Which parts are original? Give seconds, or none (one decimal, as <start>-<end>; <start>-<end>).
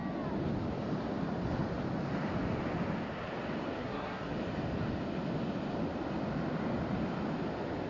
0.0-3.8; 4.3-7.9